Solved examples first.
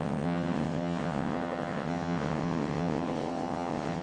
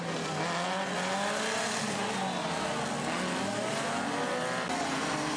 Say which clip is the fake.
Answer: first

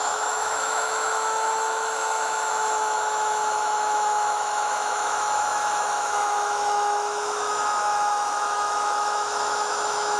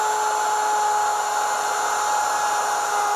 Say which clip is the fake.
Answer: first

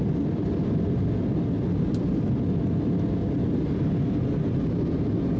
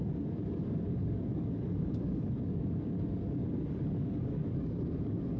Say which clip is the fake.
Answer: second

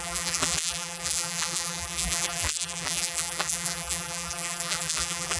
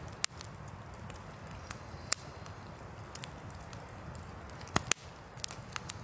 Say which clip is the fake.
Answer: first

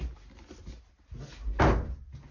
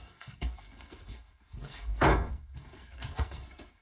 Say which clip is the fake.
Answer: second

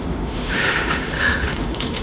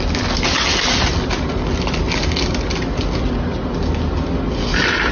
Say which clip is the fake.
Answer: first